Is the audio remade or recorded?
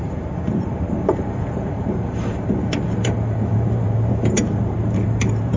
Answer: remade